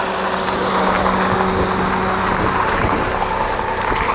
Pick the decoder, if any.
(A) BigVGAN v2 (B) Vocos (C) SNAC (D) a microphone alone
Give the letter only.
D